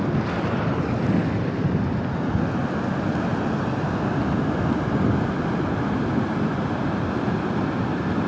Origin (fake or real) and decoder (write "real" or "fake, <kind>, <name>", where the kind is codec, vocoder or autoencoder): real